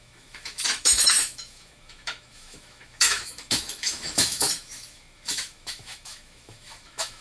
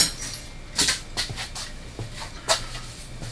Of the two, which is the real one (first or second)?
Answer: second